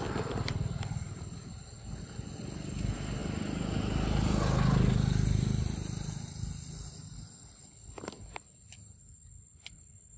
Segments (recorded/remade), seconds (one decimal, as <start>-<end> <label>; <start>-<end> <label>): 0.0-10.2 recorded